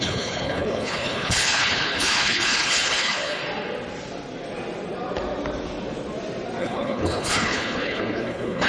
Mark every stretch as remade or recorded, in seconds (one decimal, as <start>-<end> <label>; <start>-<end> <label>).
0.0-3.4 remade; 3.4-6.6 recorded; 6.6-8.7 remade